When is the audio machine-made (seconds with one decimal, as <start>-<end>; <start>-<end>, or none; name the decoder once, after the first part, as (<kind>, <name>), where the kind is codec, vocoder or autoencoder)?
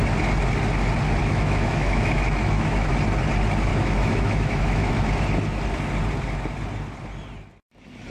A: 1.2-2.9 (autoencoder, DAC-VAE); 3.7-4.9